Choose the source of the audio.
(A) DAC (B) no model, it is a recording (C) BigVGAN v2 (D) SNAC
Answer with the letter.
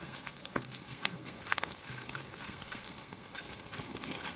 D